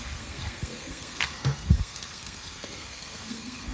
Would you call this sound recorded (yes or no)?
no